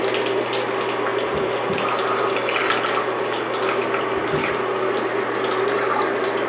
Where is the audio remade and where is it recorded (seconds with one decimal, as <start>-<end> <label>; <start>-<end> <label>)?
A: 0.0-6.5 recorded